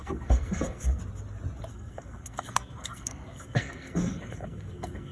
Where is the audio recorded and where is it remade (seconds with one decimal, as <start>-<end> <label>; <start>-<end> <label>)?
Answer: 0.0-1.0 remade; 1.0-1.7 recorded; 1.7-5.1 remade